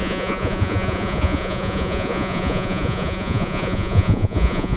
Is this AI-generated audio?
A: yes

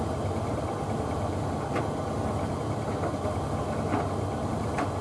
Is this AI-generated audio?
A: no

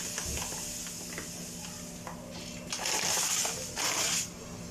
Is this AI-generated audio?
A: no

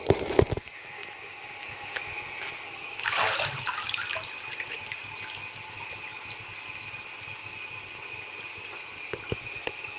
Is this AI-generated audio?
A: no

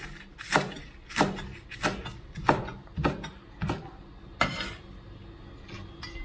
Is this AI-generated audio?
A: no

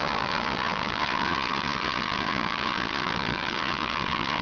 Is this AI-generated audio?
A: yes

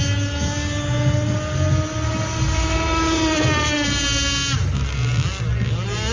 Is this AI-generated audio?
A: no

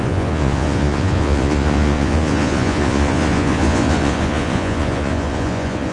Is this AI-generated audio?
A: yes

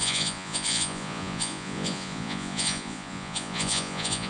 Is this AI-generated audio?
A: yes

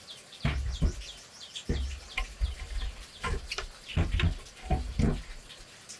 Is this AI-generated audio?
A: no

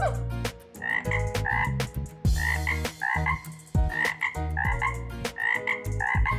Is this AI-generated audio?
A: no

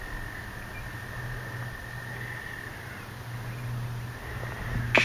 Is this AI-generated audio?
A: no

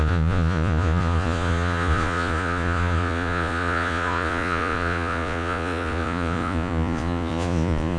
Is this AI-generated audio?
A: yes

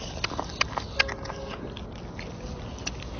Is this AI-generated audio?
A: no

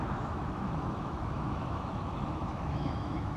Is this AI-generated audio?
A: yes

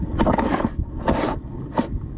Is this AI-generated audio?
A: no